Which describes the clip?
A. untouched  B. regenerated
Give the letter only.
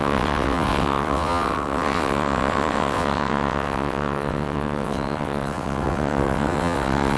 B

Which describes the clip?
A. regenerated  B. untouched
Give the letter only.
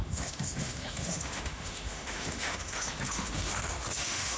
A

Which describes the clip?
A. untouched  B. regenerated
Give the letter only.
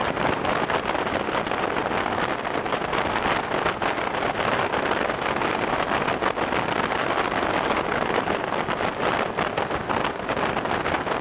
A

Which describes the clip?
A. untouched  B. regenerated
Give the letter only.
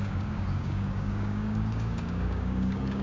B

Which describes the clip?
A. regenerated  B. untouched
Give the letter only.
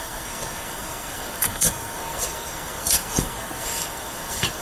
A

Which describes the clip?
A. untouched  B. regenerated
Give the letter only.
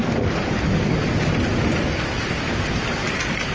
A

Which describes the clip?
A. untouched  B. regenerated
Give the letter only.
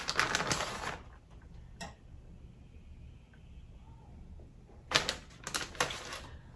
A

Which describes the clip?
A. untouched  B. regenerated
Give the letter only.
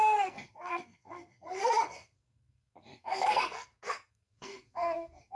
B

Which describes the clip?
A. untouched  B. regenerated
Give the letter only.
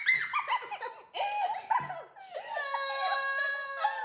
A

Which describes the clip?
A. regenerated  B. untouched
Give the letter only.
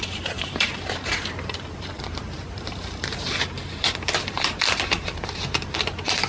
A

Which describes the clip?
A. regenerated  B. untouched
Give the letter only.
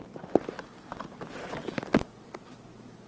B